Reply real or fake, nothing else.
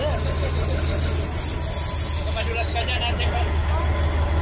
real